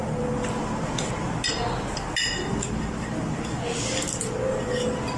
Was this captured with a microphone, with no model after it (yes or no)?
yes